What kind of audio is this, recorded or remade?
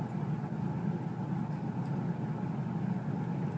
recorded